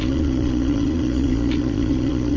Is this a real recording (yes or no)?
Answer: no